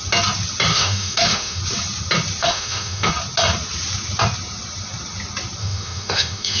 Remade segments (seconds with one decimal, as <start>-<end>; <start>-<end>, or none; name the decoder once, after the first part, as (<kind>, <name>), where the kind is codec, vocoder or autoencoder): 0.7-1.6 (autoencoder, DAC-VAE); 2.4-3.1; 5.6-6.6